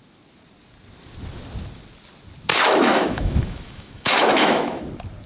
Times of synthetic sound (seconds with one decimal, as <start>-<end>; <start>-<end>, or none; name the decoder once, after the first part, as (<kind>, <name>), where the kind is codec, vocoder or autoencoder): 2.5-4.8 (autoencoder, DAC-VAE)

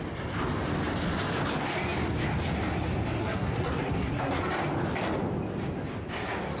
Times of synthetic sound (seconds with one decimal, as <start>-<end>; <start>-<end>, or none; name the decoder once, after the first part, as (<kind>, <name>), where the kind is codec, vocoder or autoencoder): 3.2-4.4 (codec, SNAC)

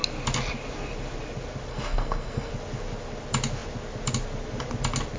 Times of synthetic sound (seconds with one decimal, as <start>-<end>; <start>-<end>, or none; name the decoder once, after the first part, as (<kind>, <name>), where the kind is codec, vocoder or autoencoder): 1.7-2.5 (codec, SNAC)

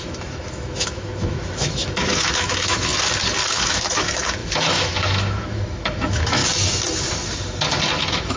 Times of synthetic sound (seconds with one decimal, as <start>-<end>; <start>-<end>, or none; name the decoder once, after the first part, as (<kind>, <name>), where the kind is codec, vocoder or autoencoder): 0.0-2.9 (autoencoder, DAC-VAE); 3.5-6.4; 8.0-8.4

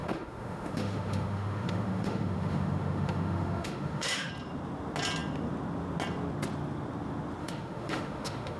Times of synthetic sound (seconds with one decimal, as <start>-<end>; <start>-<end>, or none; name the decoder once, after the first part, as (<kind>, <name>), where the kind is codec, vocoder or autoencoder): 0.0-4.3 (autoencoder, DAC-VAE); 7.4-8.6

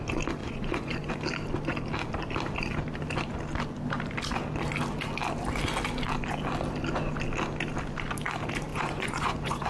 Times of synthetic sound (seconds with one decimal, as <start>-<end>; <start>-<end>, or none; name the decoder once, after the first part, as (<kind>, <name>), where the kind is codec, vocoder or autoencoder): 0.4-1.1 (vocoder, Vocos); 8.7-9.7

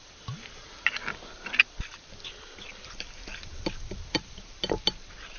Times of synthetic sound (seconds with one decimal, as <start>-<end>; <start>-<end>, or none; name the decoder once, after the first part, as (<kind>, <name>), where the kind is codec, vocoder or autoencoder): none

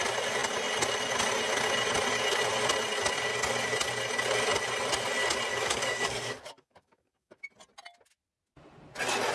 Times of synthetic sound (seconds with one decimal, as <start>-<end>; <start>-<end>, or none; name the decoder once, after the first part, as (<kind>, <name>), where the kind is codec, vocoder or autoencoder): 5.5-7.4 (codec, DAC)